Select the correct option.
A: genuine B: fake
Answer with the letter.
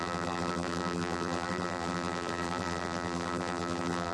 B